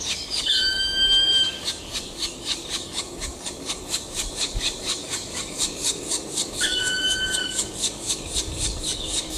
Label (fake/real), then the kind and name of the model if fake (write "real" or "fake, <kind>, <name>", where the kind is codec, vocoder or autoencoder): fake, codec, DAC